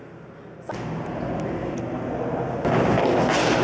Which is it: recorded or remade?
recorded